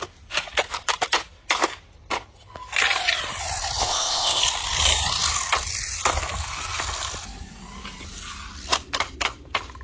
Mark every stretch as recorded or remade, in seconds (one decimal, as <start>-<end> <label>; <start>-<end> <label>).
0.0-3.8 recorded; 3.8-4.4 remade; 4.4-9.8 recorded